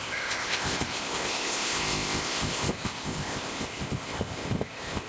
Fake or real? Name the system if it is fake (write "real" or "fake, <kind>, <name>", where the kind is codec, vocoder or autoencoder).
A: fake, codec, ZipCodec